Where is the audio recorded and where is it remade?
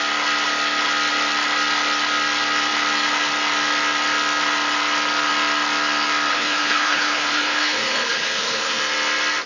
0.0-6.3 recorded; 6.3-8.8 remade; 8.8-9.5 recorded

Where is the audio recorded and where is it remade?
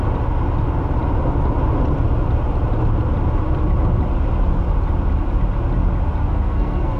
0.0-6.2 recorded; 6.2-7.0 remade